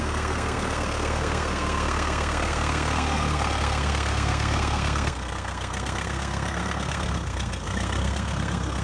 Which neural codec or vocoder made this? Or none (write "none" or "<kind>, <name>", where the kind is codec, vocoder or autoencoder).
codec, SNAC